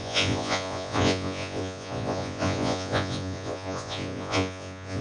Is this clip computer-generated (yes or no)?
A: yes